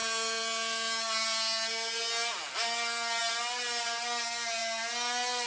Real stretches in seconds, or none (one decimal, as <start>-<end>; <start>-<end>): 0.0-5.5